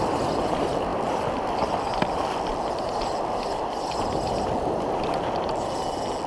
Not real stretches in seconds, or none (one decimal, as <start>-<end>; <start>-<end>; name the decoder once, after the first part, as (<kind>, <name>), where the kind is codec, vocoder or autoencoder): none

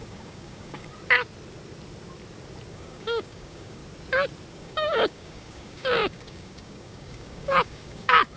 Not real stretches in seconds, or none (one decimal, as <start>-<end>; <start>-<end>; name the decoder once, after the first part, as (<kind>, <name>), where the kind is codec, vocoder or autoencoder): 0.0-0.9 (codec, DAC); 2.7-3.8; 4.5-8.4